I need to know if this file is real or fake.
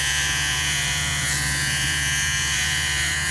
fake